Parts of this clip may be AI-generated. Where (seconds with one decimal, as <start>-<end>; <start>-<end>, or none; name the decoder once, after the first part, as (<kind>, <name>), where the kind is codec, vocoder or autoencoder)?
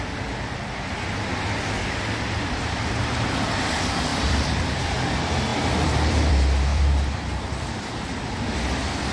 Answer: 4.1-4.8 (vocoder, BigVGAN v2); 5.5-6.3; 6.7-7.9